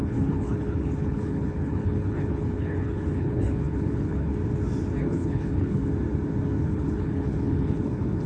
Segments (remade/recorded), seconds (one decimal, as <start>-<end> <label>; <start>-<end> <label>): 0.0-4.3 remade; 4.3-5.0 recorded; 5.0-5.8 remade; 5.8-6.6 recorded; 6.6-8.3 remade